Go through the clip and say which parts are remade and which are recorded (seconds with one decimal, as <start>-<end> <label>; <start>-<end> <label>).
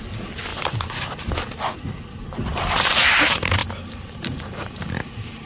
0.0-2.5 recorded; 2.5-3.1 remade; 3.1-5.5 recorded